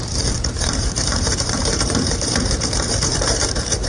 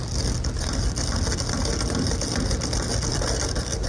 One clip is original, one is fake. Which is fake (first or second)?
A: first